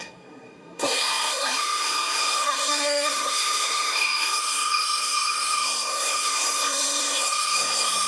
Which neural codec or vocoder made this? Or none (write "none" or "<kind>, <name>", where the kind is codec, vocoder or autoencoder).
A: codec, SNAC